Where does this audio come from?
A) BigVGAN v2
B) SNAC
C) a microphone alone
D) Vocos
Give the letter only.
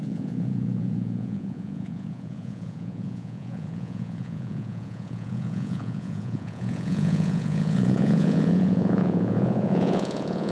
D